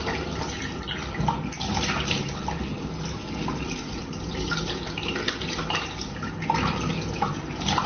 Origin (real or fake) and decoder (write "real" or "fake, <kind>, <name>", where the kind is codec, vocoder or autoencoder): real